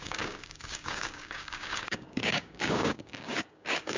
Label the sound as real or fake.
fake